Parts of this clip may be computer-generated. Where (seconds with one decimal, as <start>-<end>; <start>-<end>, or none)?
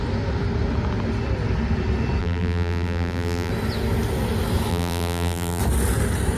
2.2-3.5; 4.7-5.6